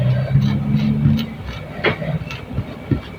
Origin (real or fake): real